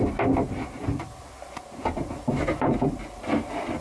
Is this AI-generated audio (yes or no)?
no